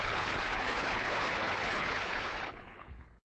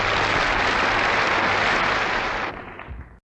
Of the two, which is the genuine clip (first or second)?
second